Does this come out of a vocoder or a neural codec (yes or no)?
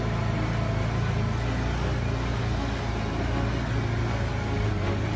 no